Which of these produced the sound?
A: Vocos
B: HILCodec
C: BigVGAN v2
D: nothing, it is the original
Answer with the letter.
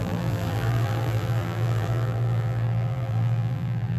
C